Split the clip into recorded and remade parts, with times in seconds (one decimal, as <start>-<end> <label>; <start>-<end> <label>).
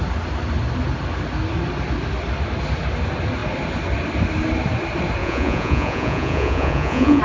0.0-5.2 recorded; 5.2-7.2 remade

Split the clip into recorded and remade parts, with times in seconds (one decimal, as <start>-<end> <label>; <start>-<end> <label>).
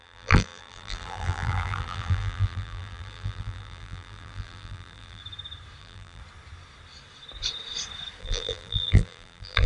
0.0-5.2 remade; 5.2-5.8 recorded; 5.8-6.2 remade; 6.2-8.2 recorded; 8.2-9.7 remade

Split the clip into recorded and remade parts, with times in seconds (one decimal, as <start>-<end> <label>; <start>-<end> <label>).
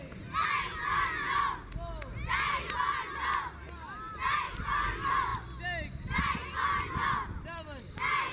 0.0-8.3 recorded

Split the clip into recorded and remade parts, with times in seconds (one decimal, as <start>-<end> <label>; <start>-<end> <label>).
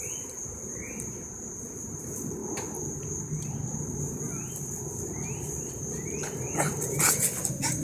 0.0-7.8 recorded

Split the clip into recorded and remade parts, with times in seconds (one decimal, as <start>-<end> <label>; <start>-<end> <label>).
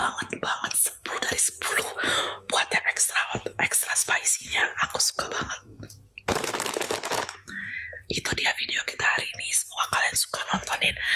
0.0-4.6 remade; 4.6-5.5 recorded; 5.5-11.2 remade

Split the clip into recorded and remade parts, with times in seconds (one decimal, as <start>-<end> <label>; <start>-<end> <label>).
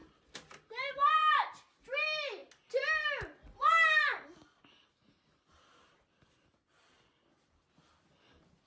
0.0-8.7 recorded